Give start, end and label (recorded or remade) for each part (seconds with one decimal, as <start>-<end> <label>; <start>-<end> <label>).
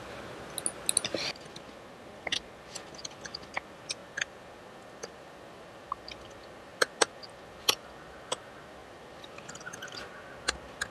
0.0-10.9 recorded